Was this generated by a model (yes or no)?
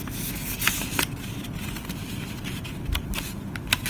no